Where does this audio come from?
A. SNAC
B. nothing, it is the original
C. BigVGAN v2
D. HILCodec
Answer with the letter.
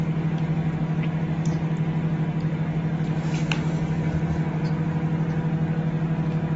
B